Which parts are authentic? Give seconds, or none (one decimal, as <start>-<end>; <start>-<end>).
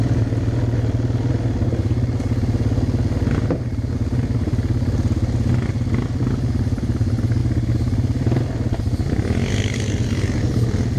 0.0-11.0